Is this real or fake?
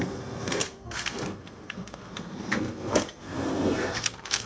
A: fake